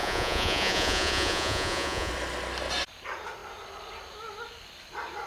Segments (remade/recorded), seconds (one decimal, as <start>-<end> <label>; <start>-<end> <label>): 0.0-2.1 remade; 2.1-5.3 recorded